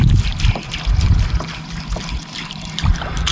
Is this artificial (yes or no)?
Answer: no